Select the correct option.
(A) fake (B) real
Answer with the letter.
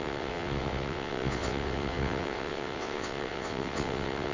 A